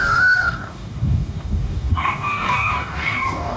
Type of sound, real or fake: fake